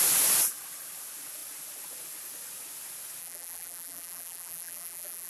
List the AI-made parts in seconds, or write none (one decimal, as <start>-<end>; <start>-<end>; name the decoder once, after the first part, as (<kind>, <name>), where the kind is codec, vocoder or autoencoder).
3.2-5.3 (vocoder, BigVGAN v2)